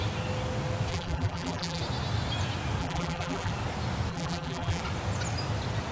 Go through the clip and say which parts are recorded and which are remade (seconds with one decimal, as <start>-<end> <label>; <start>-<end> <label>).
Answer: 0.0-0.9 recorded; 0.9-1.8 remade; 1.8-2.8 recorded; 2.8-3.5 remade; 3.5-4.1 recorded; 4.1-4.8 remade; 4.8-5.9 recorded